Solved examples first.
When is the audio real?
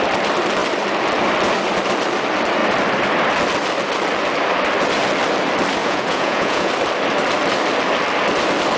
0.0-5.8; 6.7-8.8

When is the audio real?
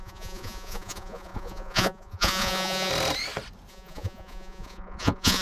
2.9-3.7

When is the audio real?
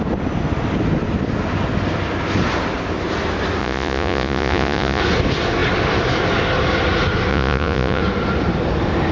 0.0-3.6; 5.0-7.3; 8.0-9.1